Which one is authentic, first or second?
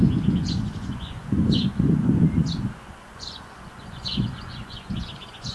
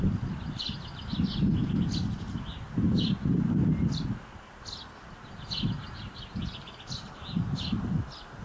second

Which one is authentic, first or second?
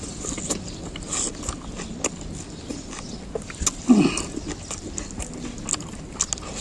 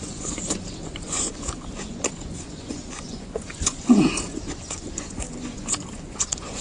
first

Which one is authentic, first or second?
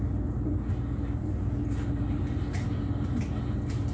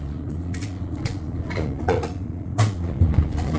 first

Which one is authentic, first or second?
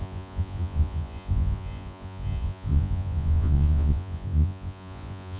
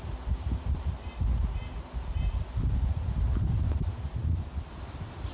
second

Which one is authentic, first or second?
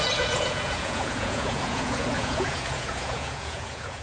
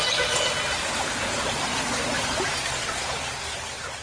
second